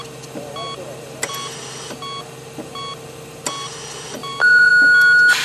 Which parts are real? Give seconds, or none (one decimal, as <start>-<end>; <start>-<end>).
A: 0.0-4.2; 4.7-5.4